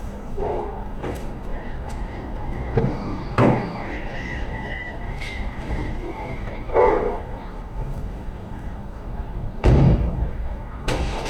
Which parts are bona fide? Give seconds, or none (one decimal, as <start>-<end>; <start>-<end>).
none